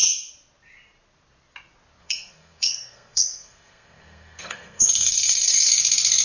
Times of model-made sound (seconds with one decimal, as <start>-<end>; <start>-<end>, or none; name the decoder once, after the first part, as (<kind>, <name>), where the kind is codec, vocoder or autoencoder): 2.0-5.7 (codec, SNAC)